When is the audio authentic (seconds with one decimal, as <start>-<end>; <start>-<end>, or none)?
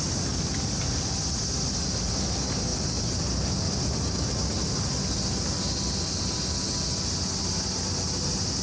0.0-8.6